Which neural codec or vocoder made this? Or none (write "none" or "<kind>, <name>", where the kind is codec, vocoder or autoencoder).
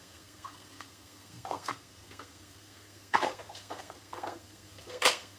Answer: codec, SNAC